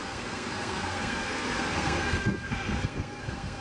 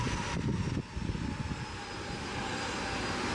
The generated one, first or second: first